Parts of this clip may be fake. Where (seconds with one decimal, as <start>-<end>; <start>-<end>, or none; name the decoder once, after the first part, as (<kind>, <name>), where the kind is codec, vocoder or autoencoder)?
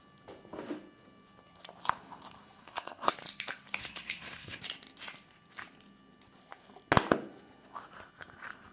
2.6-3.1 (codec, SNAC); 3.8-4.6